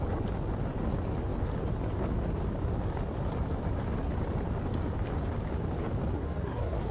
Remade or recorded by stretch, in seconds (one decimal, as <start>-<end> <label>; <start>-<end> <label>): 0.0-6.1 recorded; 6.1-6.9 remade